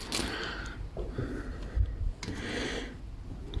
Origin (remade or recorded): recorded